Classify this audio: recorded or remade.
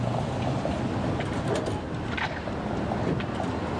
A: recorded